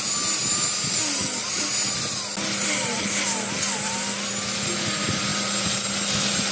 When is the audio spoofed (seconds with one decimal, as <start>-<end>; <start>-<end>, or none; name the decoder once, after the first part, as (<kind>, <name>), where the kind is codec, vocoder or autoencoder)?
none